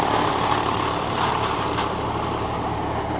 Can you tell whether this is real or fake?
fake